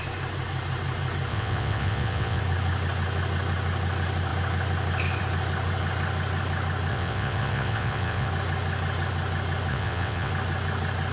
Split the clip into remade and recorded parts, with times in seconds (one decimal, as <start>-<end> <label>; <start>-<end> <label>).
0.0-1.3 recorded; 1.3-2.4 remade; 2.4-6.9 recorded; 6.9-8.3 remade; 8.3-9.7 recorded; 9.7-10.3 remade; 10.3-11.1 recorded